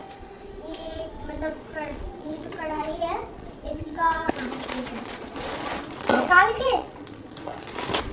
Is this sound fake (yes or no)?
yes